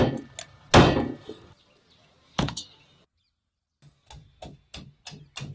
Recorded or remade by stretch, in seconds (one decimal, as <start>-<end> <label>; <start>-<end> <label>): 0.0-2.0 recorded; 2.0-3.5 remade; 3.5-5.5 recorded